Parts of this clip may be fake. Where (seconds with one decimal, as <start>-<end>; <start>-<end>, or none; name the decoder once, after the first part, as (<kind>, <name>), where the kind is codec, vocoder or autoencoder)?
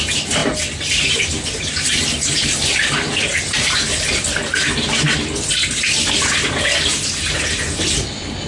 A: none